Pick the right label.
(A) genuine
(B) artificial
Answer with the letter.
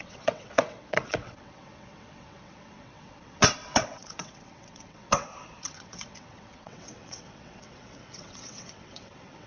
B